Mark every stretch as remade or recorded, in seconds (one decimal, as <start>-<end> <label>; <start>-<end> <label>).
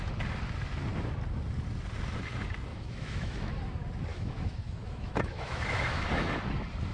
0.0-2.7 recorded; 2.7-3.5 remade; 3.5-4.1 recorded; 4.1-6.2 remade; 6.2-6.9 recorded